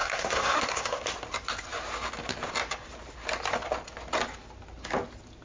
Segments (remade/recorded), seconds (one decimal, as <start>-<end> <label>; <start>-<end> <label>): 0.0-1.0 remade; 1.0-5.4 recorded